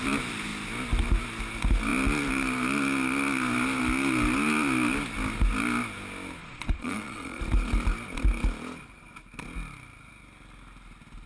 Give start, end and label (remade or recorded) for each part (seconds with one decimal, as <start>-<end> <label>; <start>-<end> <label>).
0.0-6.4 recorded; 6.4-7.4 remade; 7.4-11.3 recorded

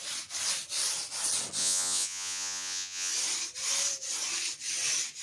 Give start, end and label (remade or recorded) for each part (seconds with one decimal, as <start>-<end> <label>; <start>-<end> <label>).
0.0-1.6 recorded; 1.6-3.1 remade; 3.1-5.2 recorded

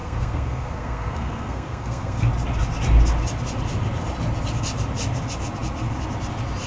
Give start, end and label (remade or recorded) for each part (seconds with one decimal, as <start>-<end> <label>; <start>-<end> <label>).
0.0-2.3 remade; 2.3-6.7 recorded

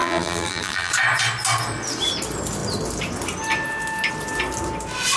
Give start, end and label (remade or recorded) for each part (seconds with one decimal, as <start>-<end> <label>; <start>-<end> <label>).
0.0-0.9 remade; 0.9-5.2 recorded

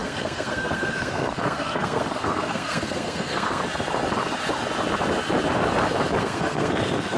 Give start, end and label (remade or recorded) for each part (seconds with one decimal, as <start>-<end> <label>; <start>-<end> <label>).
0.0-3.6 remade; 3.6-6.2 recorded; 6.2-7.2 remade

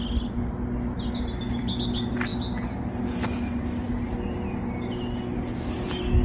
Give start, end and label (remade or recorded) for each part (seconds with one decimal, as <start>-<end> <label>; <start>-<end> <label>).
0.0-6.2 recorded

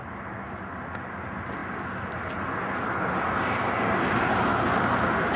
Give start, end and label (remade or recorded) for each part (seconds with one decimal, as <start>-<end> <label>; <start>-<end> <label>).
0.0-5.4 recorded